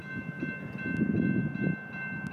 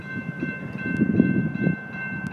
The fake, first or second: second